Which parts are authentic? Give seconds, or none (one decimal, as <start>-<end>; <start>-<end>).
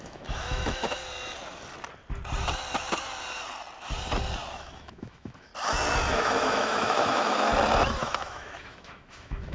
1.0-4.5; 5.5-6.1; 7.5-8.0